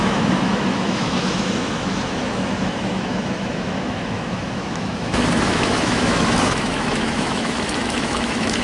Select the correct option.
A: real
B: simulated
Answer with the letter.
B